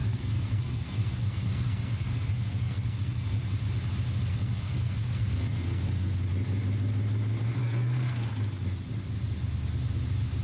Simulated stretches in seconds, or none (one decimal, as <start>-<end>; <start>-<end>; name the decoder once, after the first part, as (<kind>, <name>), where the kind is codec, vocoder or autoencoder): 0.0-3.4 (codec, SNAC); 4.3-6.1; 7.6-8.3